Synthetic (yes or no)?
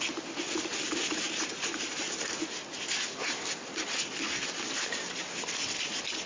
no